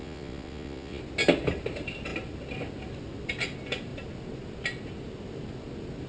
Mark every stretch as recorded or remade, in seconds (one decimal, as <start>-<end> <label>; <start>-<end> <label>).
0.0-1.0 remade; 1.0-6.1 recorded